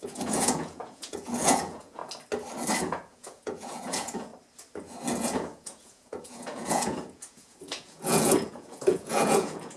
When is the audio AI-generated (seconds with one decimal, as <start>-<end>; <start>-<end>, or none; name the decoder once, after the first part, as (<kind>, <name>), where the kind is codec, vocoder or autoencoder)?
0.0-2.0 (vocoder, Vocos); 2.8-4.3; 5.2-9.8